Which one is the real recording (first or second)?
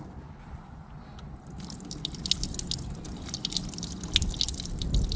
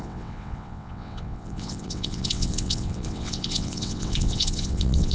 first